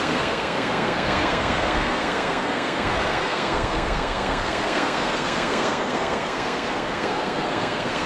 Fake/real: fake